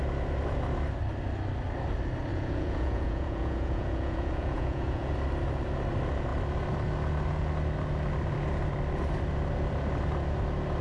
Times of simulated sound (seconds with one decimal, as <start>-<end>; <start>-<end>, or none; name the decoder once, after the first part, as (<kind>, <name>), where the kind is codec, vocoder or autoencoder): 2.3-5.1 (vocoder, Vocos)